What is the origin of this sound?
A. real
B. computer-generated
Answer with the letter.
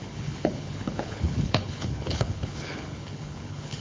B